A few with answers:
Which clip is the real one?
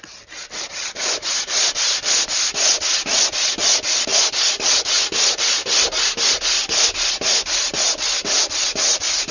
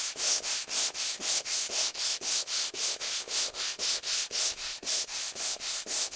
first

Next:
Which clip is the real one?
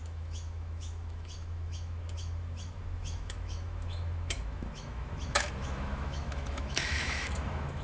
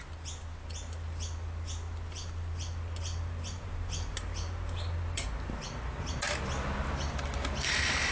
second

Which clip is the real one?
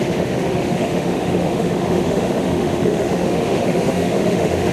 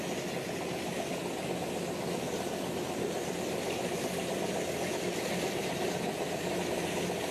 second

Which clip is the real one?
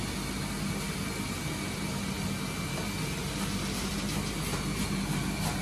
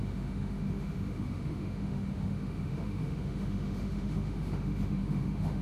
first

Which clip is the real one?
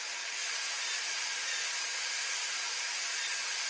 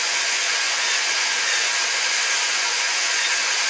first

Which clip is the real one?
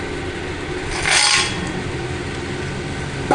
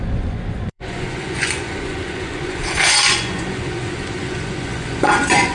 first